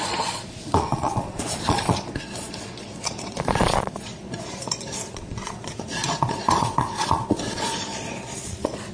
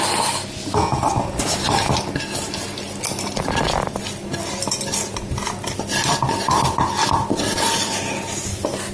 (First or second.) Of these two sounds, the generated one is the first